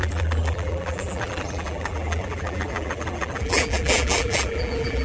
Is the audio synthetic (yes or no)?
yes